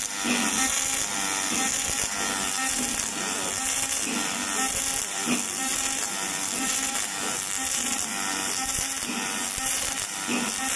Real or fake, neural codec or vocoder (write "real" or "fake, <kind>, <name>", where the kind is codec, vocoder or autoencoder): real